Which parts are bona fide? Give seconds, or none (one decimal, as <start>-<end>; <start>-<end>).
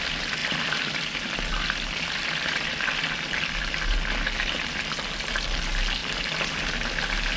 0.0-0.4; 3.6-6.0; 7.0-7.4